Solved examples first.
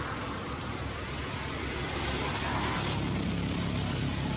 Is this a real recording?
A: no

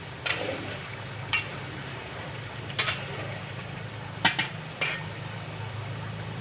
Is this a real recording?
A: yes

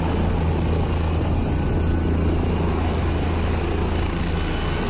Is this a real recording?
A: yes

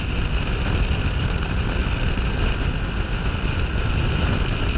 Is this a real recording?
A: yes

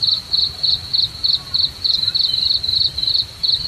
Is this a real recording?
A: yes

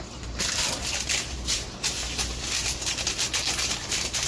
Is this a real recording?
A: no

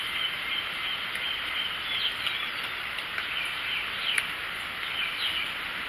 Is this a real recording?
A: yes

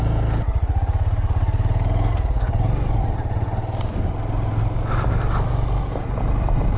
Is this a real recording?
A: yes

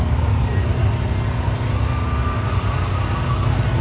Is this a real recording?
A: yes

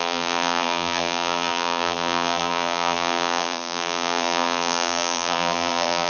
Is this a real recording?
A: no